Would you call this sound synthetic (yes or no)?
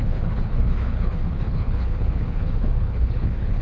yes